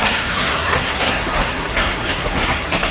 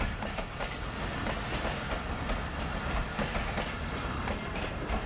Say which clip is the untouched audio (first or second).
second